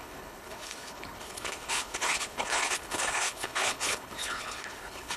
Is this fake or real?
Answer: fake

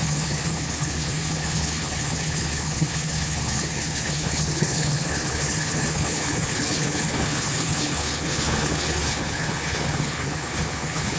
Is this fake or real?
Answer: fake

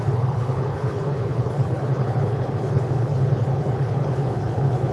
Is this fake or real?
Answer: fake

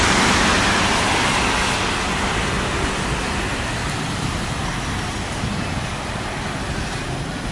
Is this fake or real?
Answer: real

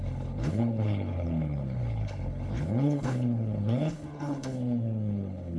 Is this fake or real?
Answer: fake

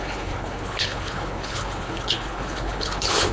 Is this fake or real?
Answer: fake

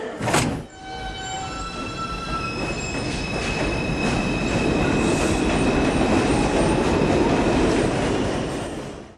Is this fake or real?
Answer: real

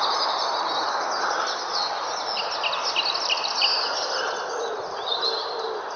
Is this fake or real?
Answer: real